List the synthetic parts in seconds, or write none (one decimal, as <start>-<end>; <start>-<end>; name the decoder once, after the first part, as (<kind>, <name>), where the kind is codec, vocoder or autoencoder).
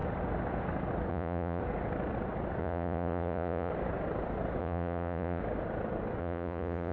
1.1-1.6 (vocoder, Vocos); 2.6-3.7; 4.6-5.4; 6.2-6.9